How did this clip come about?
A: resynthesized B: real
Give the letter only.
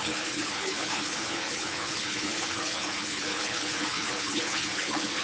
A